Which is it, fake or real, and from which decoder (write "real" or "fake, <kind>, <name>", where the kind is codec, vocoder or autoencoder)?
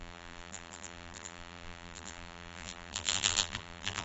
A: fake, vocoder, BigVGAN v2